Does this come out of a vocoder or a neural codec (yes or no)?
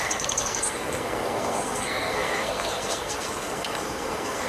yes